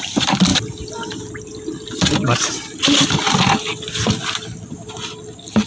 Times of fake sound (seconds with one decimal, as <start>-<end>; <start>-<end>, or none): 0.0-0.5; 2.8-3.7; 4.9-5.7